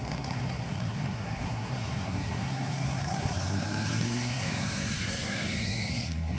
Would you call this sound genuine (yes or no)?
no